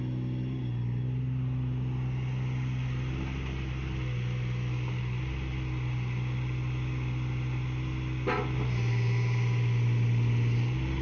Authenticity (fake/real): real